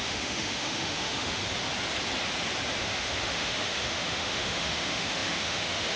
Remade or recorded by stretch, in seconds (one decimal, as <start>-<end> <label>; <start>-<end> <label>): 0.0-1.4 remade; 1.4-2.8 recorded; 2.8-6.0 remade